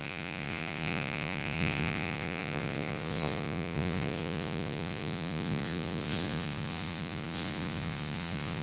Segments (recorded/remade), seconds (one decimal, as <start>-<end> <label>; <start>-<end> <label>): 0.0-8.6 remade